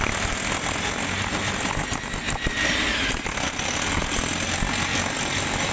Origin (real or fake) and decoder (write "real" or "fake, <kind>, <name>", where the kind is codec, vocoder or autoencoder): real